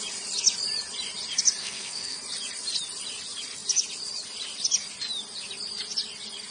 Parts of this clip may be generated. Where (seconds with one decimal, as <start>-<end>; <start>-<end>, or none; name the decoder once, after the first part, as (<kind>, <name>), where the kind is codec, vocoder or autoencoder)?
1.6-2.2 (codec, SNAC)